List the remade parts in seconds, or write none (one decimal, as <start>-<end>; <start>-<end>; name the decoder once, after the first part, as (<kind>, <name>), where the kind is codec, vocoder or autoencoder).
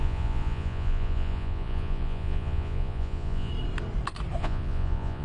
0.0-3.5 (vocoder, Vocos); 4.4-5.2